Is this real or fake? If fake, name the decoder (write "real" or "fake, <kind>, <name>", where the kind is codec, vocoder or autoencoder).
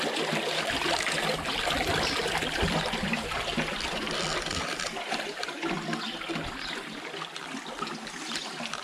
real